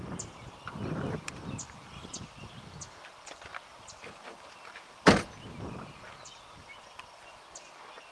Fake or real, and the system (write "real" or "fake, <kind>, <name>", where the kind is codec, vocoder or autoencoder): real